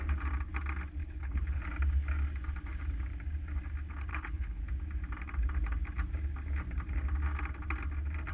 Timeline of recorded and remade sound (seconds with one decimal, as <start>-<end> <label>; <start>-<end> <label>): 0.0-1.0 recorded; 1.0-1.6 remade; 1.6-4.1 recorded; 4.1-4.6 remade; 4.6-8.3 recorded